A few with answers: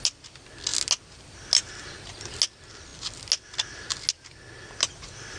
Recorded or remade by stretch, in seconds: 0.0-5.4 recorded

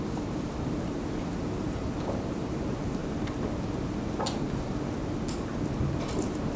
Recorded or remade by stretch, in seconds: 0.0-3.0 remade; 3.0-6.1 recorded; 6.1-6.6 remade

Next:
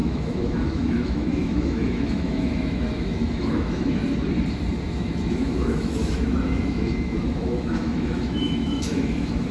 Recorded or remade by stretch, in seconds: 0.0-4.0 remade; 4.0-4.9 recorded; 4.9-9.5 remade

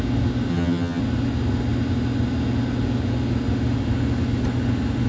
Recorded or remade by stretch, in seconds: 0.0-0.5 recorded; 0.5-1.0 remade; 1.0-5.1 recorded

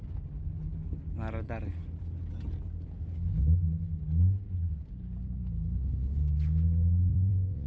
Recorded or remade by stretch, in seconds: 0.0-7.1 recorded; 7.1-7.7 remade